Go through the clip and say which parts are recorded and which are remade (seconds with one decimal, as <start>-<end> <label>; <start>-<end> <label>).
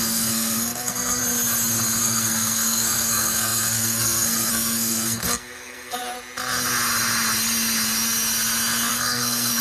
0.0-1.2 remade; 1.2-2.0 recorded; 2.0-6.0 remade; 6.0-8.9 recorded; 8.9-9.6 remade